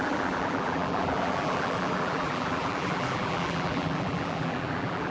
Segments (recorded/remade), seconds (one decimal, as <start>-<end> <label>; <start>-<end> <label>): 0.0-5.1 remade